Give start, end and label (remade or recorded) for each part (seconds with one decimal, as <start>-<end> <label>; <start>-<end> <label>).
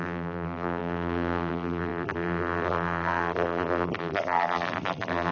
0.0-5.3 remade